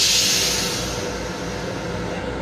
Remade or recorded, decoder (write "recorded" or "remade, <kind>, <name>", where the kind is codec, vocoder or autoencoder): recorded